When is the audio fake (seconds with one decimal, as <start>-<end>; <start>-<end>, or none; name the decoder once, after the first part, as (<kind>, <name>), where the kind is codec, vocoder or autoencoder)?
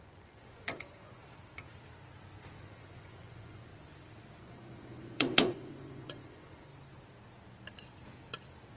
0.0-1.2 (vocoder, Vocos); 2.6-3.7; 4.4-6.7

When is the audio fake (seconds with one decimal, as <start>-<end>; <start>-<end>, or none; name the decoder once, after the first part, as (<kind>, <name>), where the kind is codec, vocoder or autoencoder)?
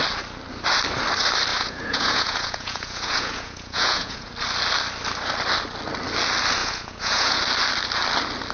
1.5-4.3 (vocoder, Vocos); 6.6-7.4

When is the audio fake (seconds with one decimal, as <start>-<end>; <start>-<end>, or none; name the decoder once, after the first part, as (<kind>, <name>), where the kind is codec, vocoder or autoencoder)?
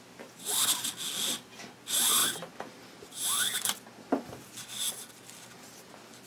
none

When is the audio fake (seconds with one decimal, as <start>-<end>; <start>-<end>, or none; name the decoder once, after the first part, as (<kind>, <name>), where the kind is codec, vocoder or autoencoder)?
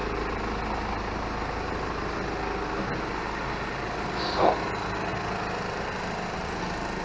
none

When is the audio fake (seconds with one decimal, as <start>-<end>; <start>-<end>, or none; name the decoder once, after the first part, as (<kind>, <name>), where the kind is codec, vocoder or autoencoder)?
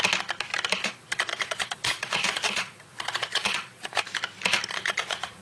0.8-4.0 (vocoder, Vocos); 4.7-5.4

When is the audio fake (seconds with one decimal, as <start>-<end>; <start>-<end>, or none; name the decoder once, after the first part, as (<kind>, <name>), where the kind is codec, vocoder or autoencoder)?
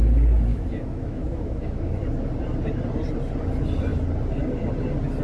0.5-2.0 (autoencoder, DAC-VAE)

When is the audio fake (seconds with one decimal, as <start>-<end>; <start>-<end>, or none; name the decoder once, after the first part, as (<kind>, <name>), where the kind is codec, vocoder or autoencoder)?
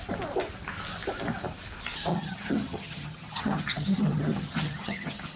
2.1-5.4 (vocoder, HiFi-GAN)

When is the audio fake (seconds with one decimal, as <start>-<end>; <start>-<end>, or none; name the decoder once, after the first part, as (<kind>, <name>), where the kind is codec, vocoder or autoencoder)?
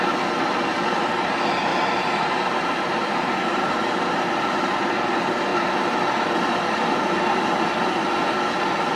1.7-4.2 (vocoder, BigVGAN v2); 5.5-7.3